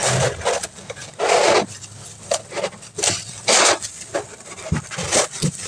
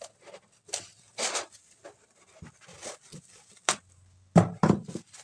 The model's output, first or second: first